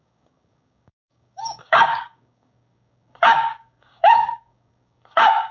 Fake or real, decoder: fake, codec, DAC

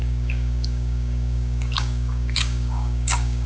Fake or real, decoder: fake, codec, DAC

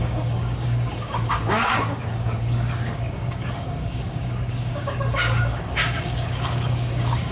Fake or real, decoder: fake, codec, DAC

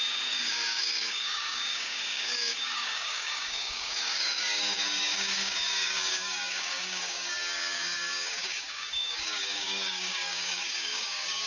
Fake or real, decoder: fake, codec, DAC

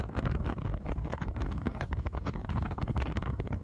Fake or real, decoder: fake, codec, DAC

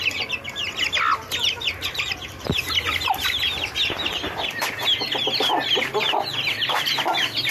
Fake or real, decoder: real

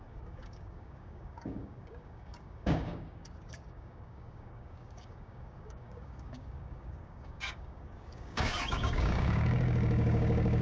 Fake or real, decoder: fake, codec, DAC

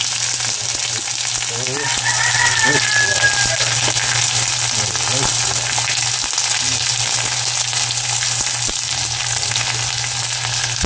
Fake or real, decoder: real